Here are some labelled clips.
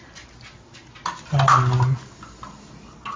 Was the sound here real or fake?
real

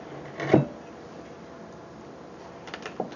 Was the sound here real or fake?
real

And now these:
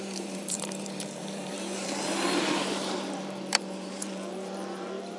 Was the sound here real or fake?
fake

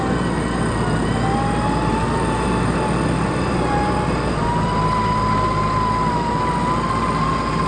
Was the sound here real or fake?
real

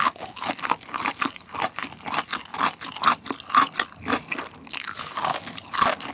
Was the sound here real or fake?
real